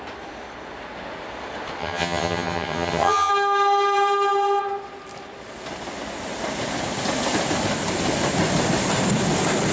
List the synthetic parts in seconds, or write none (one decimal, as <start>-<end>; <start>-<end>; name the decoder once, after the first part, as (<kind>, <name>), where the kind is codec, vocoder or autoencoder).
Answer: 1.8-3.3 (vocoder, HiFi-GAN)